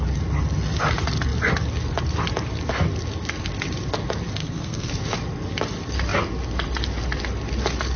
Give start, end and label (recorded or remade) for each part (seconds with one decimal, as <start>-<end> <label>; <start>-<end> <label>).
0.0-4.4 recorded; 4.4-4.9 remade; 4.9-8.0 recorded